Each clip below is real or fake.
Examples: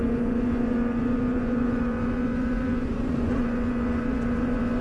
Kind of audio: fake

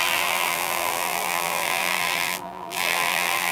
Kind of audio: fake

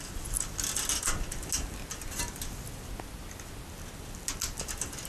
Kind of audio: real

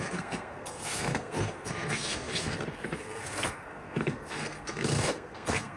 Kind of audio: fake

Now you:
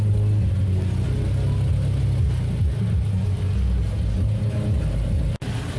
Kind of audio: real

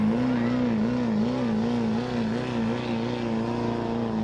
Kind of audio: real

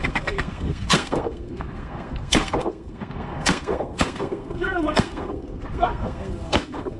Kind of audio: fake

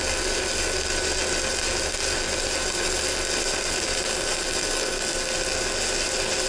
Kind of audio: real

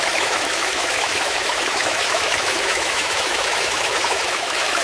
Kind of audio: fake